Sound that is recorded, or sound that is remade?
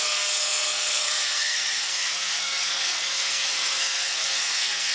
remade